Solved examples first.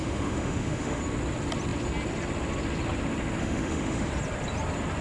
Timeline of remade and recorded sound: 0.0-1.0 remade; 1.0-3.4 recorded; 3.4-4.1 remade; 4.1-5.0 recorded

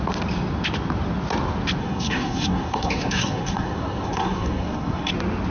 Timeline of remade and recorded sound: 0.0-1.8 recorded; 1.8-5.1 remade; 5.1-5.5 recorded

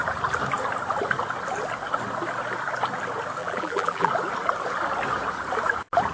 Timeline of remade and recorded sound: 0.0-3.4 recorded; 3.4-4.1 remade; 4.1-6.1 recorded

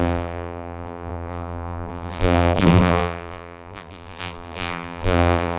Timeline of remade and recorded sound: 0.0-5.6 remade